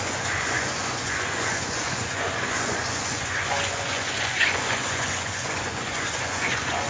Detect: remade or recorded remade